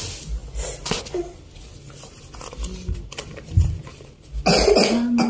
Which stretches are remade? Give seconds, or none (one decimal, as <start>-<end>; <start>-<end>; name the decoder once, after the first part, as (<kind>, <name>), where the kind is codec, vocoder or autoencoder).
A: none